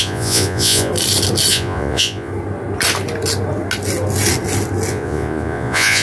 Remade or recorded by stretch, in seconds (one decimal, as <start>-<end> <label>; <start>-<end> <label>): 0.0-0.9 remade; 0.9-1.5 recorded; 1.5-2.3 remade; 2.3-4.9 recorded; 4.9-6.0 remade